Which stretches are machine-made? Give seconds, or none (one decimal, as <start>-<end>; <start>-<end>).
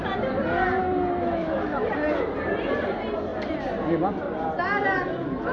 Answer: 0.8-1.9